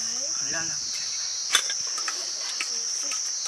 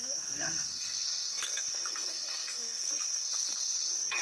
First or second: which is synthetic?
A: second